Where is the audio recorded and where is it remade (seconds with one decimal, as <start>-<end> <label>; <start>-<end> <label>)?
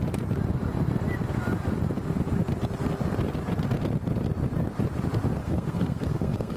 0.0-5.4 recorded; 5.4-6.6 remade